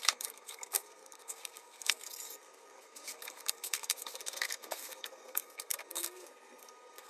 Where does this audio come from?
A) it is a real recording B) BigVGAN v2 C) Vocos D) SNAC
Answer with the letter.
D